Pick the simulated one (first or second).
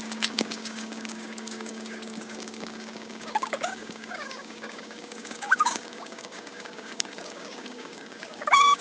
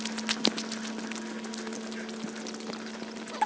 first